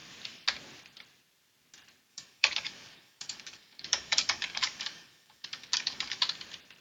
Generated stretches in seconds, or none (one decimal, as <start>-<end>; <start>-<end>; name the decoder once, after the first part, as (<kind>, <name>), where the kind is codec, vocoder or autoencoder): 2.1-6.2 (codec, DAC)